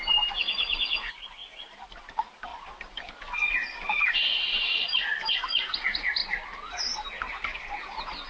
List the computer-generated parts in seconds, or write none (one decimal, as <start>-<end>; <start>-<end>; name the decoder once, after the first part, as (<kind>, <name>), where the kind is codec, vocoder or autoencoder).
1.4-2.0 (vocoder, BigVGAN v2); 2.5-3.1; 3.6-5.3